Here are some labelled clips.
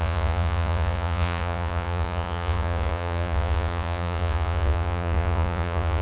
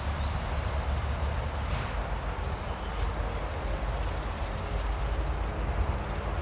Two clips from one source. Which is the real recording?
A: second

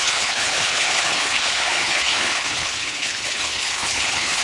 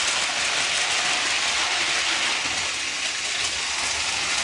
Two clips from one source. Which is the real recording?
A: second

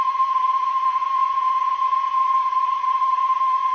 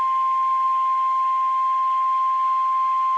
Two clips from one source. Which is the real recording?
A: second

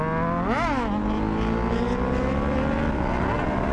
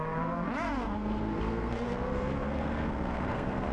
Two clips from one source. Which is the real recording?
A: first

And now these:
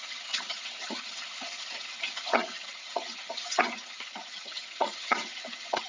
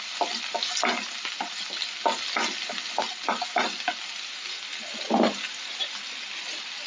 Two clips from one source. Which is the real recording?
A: second